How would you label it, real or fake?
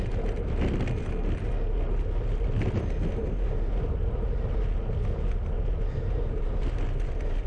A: real